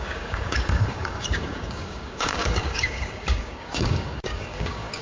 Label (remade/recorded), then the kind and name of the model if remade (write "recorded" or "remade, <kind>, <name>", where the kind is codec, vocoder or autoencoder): remade, codec, DAC